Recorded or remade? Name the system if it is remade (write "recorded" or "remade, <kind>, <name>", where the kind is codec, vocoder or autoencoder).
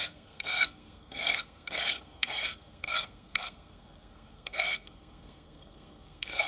remade, codec, SNAC